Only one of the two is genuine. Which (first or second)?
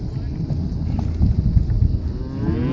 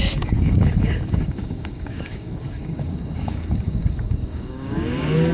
first